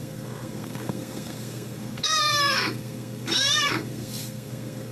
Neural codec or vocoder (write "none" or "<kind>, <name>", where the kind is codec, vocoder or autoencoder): codec, SNAC